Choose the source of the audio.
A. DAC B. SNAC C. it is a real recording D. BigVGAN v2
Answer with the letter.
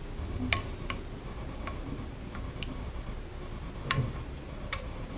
C